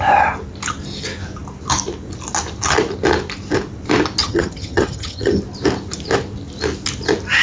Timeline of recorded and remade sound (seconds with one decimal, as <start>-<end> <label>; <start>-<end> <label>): 0.0-4.2 recorded; 4.2-5.4 remade; 5.4-7.4 recorded